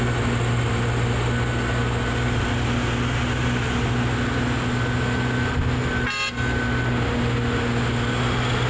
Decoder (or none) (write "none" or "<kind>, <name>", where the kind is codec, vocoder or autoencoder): none